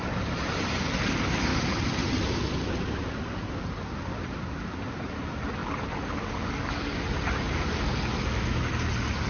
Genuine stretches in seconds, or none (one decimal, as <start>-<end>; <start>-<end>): 0.0-9.3